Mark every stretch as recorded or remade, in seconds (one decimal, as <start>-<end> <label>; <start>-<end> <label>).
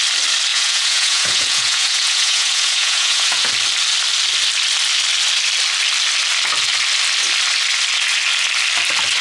0.0-0.5 recorded; 0.5-3.5 remade; 3.5-9.2 recorded